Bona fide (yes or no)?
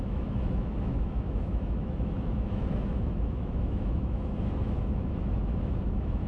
no